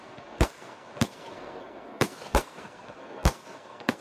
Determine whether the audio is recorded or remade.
remade